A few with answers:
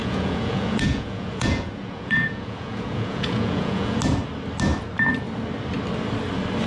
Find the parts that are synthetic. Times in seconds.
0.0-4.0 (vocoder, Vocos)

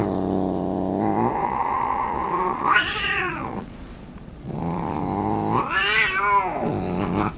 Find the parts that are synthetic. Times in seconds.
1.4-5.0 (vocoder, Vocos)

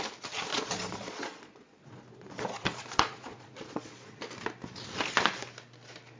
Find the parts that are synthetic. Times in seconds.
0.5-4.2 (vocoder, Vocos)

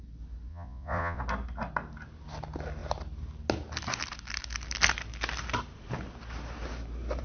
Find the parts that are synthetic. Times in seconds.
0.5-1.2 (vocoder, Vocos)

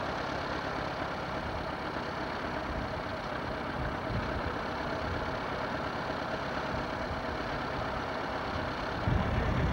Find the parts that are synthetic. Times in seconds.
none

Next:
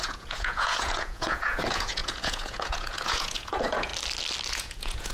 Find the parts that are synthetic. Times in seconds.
0.0-3.9 (vocoder, Vocos); 4.5-5.1